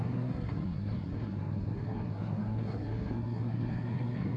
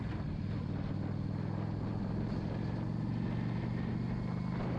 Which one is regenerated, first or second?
first